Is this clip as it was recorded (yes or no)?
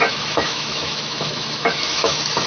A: no